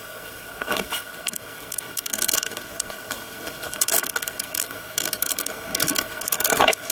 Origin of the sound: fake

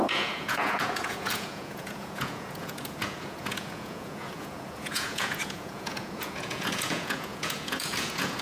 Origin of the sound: fake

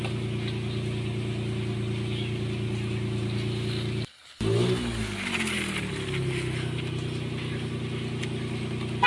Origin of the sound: real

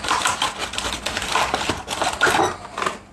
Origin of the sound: real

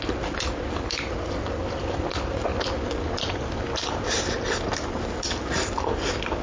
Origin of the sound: real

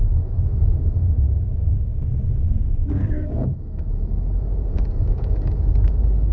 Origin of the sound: fake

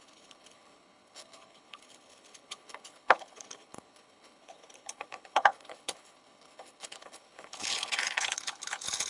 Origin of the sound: fake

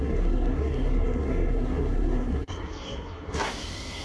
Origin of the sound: fake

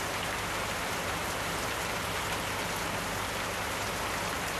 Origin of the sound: real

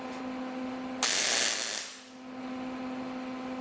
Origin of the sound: real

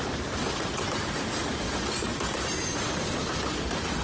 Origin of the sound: real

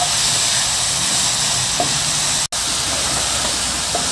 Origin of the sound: real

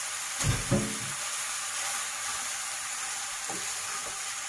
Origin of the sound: real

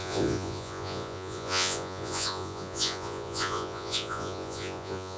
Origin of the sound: fake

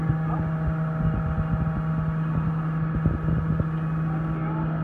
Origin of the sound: real